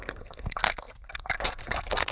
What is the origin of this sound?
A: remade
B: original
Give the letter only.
A